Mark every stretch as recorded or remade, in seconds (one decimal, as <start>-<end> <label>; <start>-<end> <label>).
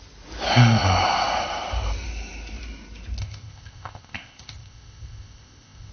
0.0-3.2 recorded; 3.2-5.9 remade